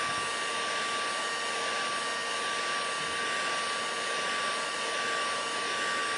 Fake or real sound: real